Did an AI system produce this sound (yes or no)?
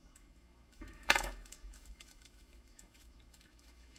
yes